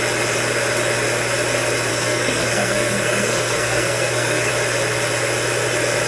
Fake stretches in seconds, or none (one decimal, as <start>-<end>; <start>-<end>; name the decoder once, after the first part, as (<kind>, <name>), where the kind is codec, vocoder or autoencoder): 1.9-4.5 (codec, SNAC)